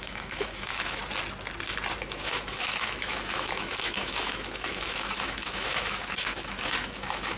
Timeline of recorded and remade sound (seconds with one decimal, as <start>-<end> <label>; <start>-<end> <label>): 0.0-1.0 remade; 1.0-2.0 recorded; 2.0-7.4 remade